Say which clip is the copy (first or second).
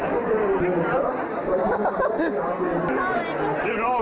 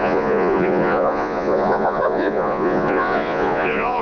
second